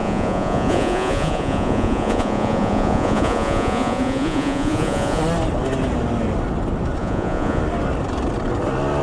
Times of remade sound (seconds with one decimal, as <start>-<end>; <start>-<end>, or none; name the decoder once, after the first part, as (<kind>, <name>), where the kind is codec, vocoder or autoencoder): 0.0-5.2 (vocoder, Vocos); 7.0-7.6

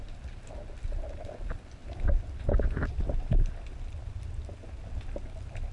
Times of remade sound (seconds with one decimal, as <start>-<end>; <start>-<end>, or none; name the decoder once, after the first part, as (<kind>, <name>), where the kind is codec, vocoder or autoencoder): none